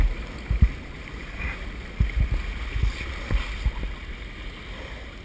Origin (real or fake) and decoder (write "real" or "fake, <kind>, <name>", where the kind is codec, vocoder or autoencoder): real